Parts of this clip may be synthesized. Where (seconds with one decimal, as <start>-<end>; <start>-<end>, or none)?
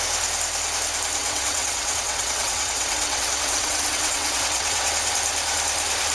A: 1.2-4.9